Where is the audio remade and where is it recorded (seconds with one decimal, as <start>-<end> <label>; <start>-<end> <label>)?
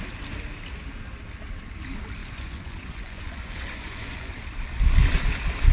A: 0.0-2.2 recorded; 2.2-4.3 remade; 4.3-5.7 recorded